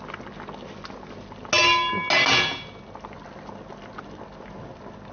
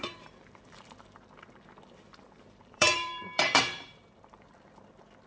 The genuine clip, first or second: first